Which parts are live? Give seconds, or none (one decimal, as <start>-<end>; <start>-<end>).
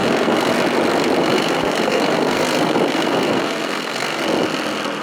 0.5-1.2; 4.2-5.0